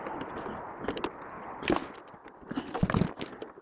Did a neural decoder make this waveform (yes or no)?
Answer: no